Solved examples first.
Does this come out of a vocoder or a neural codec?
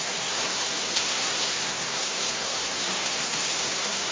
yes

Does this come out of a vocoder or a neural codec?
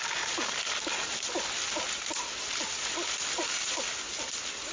no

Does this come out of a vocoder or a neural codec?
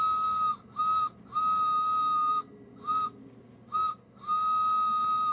no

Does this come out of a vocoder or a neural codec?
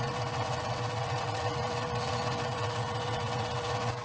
yes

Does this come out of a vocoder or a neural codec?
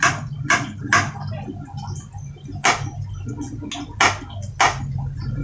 no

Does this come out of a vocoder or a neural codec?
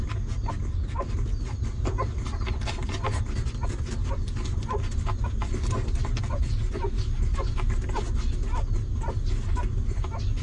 no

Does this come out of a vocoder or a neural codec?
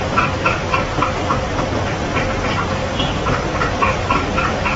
no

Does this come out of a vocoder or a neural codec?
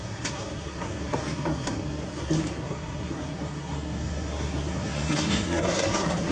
yes